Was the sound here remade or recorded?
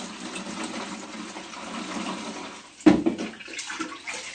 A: recorded